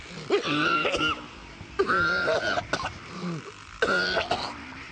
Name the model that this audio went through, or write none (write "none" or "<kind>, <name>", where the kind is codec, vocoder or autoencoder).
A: none